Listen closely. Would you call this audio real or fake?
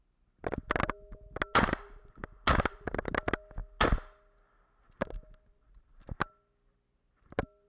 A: real